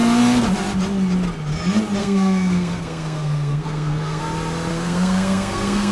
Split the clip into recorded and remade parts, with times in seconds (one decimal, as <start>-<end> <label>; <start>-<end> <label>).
0.0-2.0 recorded; 2.0-4.2 remade; 4.2-4.7 recorded; 4.7-5.9 remade